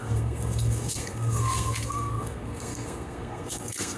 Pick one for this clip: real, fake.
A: fake